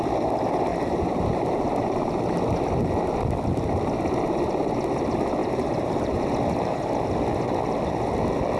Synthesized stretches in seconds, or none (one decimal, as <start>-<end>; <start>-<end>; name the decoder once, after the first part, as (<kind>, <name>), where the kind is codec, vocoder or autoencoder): 0.7-2.2 (vocoder, BigVGAN v2); 5.4-7.1